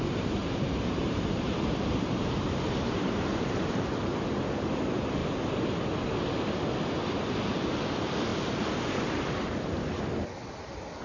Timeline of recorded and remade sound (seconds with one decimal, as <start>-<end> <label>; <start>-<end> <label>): 0.0-0.4 recorded; 0.4-3.7 remade; 3.7-11.0 recorded